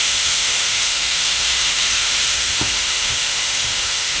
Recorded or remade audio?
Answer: remade